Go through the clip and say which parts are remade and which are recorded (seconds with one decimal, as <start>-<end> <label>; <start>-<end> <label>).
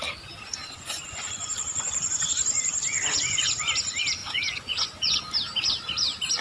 0.0-0.6 recorded; 0.6-2.3 remade; 2.3-2.9 recorded; 2.9-3.6 remade; 3.6-4.2 recorded; 4.2-5.2 remade; 5.2-6.4 recorded